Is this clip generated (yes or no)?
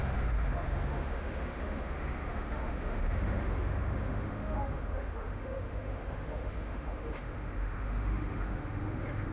yes